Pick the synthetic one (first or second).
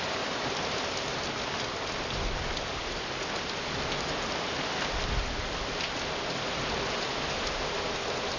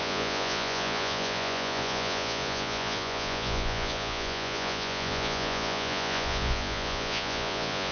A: second